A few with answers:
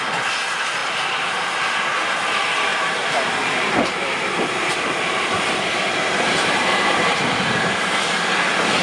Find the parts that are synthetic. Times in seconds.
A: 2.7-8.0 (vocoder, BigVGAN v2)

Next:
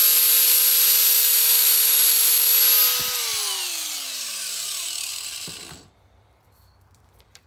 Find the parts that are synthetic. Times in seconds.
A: 3.3-7.5 (vocoder, BigVGAN v2)

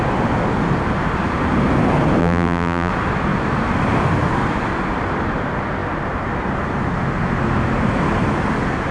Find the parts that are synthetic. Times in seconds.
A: 2.2-2.9 (vocoder, BigVGAN v2)